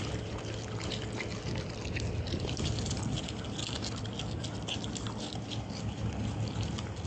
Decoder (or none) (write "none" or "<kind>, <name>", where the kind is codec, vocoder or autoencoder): none